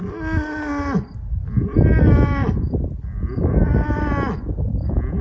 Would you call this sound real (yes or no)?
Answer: yes